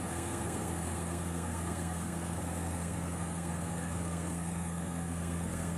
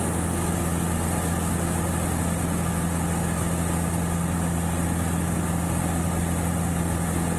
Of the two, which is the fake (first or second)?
first